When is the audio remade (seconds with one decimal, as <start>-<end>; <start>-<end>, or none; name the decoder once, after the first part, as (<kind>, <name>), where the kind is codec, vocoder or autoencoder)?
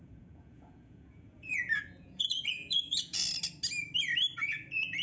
0.0-3.2 (vocoder, Vocos); 4.4-5.0